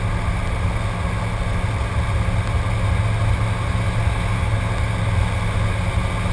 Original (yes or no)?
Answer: yes